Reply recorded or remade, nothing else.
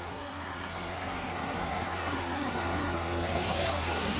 remade